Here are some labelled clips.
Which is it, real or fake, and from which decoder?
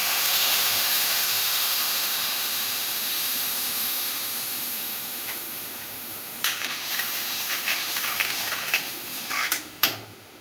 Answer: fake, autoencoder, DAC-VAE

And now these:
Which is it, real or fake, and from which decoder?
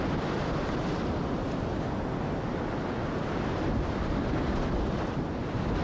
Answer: real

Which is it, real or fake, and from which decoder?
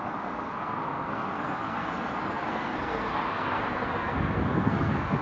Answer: fake, codec, SNAC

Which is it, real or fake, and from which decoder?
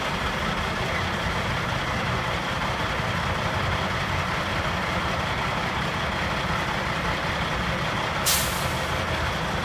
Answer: fake, vocoder, BigVGAN v2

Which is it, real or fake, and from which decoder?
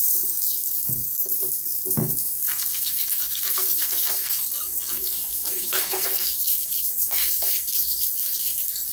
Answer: fake, codec, SNAC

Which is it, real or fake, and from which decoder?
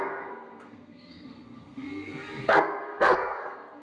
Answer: fake, codec, SNAC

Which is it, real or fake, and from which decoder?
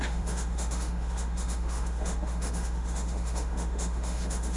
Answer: fake, autoencoder, DAC-VAE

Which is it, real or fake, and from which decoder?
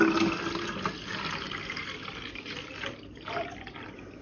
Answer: real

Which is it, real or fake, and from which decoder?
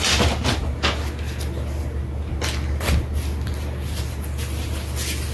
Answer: real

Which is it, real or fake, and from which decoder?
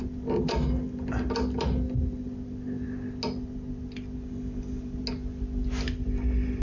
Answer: real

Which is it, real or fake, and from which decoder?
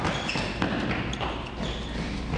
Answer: real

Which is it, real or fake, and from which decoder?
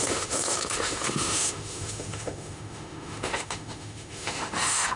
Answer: fake, autoencoder, DAC-VAE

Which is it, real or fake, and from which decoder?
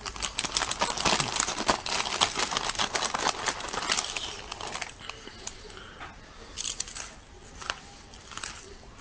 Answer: real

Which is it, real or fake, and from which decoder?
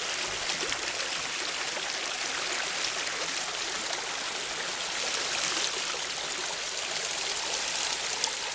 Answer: real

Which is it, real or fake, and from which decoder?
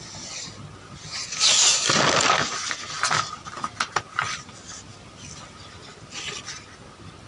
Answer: real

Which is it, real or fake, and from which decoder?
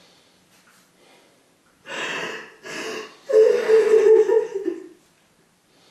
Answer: real